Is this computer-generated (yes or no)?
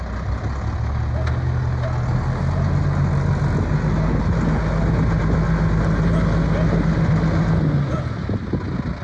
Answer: no